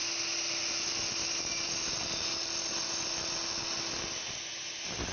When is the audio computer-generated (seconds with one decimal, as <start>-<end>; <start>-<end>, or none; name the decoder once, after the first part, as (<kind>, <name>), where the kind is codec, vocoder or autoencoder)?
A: none